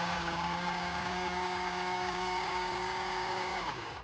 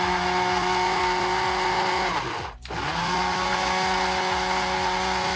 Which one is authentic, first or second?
second